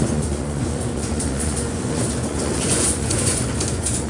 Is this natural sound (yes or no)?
no